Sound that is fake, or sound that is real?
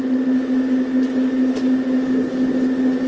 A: real